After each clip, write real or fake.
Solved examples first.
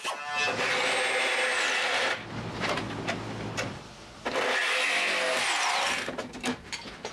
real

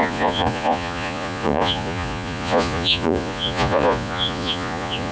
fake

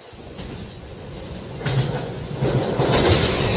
fake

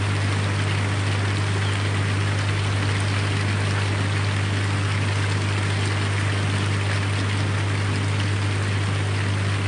real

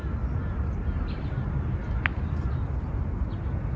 real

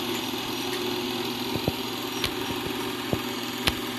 real